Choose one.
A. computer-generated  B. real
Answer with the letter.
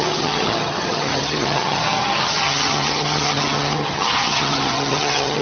A